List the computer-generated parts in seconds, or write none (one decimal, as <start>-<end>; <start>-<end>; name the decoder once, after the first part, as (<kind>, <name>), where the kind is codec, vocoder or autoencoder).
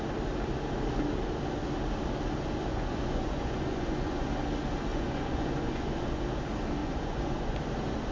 2.7-4.3 (vocoder, Vocos); 4.9-6.2; 6.8-7.6